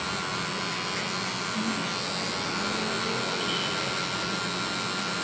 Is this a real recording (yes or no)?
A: yes